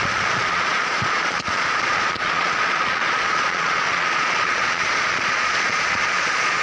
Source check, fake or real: fake